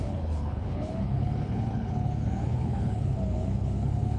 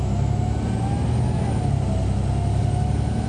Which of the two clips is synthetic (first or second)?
first